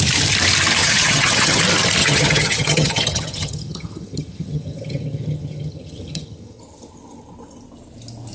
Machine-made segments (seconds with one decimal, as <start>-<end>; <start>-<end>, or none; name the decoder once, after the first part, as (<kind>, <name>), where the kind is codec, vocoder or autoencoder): 0.8-1.6 (vocoder, HiFi-GAN); 2.0-6.6